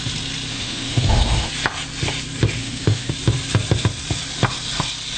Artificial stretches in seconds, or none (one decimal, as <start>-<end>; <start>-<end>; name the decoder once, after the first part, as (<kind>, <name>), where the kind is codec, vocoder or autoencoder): 0.5-1.5 (autoencoder, DAC-VAE); 2.6-3.1